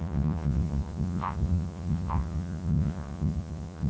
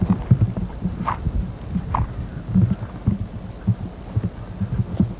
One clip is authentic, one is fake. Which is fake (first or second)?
first